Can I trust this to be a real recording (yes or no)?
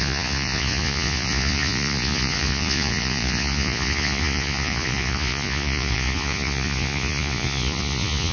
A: no